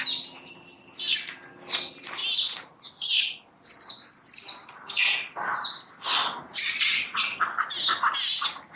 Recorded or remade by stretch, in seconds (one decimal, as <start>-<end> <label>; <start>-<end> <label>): 0.0-8.8 recorded